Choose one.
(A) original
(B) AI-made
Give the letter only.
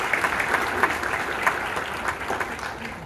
A